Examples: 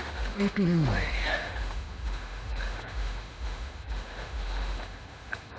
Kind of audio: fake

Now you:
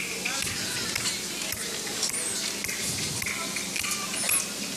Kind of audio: real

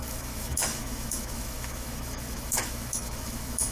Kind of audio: fake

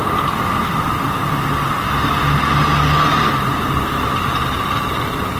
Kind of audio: real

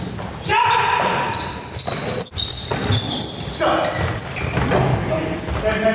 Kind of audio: real